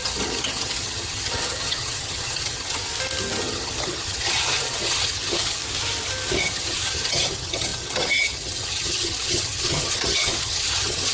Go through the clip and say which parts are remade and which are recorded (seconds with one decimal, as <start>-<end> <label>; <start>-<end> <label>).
0.0-2.9 remade; 2.9-3.4 recorded; 3.4-5.6 remade; 5.6-6.4 recorded; 6.4-11.1 remade